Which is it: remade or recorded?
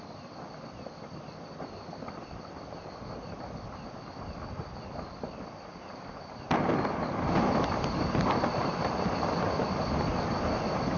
recorded